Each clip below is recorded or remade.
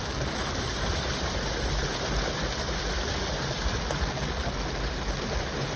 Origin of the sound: recorded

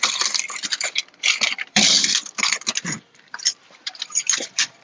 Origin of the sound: remade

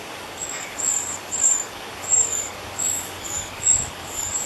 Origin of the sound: remade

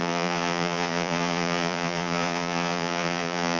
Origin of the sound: remade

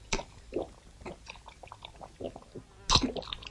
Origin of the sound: recorded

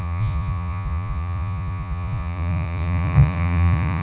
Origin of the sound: remade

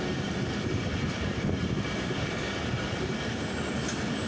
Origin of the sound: recorded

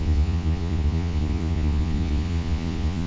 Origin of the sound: remade